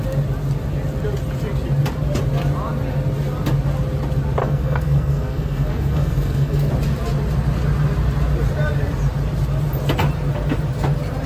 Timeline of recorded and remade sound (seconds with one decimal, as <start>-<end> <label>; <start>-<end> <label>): 0.0-4.4 recorded; 4.4-6.7 remade; 6.7-11.3 recorded